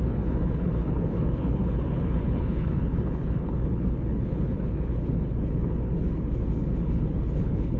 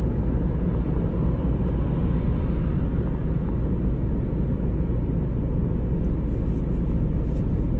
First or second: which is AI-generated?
first